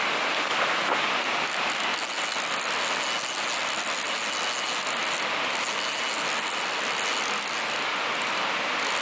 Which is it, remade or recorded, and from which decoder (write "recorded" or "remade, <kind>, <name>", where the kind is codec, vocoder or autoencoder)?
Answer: recorded